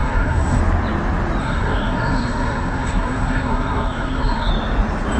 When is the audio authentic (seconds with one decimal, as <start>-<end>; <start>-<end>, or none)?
0.6-1.4; 4.5-5.2

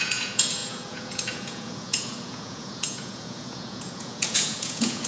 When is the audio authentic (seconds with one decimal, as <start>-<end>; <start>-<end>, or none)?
none